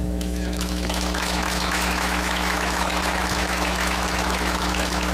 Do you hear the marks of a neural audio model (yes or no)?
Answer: yes